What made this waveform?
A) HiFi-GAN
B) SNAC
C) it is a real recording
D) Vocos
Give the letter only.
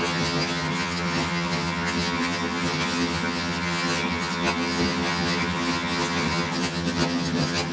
A